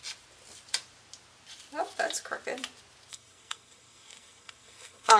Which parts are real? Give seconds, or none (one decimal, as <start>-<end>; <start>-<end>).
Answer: 0.0-3.1